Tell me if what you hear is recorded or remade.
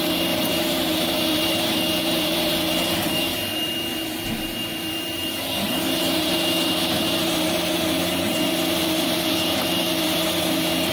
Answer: remade